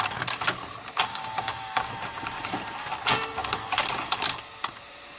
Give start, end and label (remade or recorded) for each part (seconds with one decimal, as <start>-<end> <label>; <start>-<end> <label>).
0.0-1.1 recorded; 1.1-1.9 remade; 1.9-5.2 recorded